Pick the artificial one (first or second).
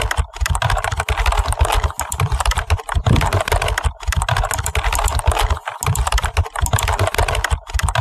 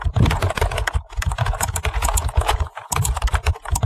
second